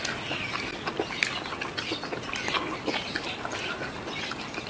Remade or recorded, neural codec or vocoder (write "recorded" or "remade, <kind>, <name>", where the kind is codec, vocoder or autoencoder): recorded